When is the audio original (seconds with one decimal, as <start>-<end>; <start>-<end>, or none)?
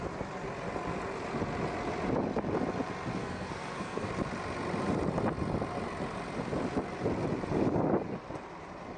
0.0-3.2; 4.1-9.0